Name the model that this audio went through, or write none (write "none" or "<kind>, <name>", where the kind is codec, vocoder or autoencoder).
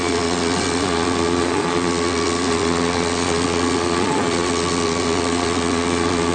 vocoder, Vocos